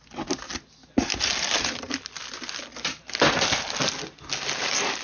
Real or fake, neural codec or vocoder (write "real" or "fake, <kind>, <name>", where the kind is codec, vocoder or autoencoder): real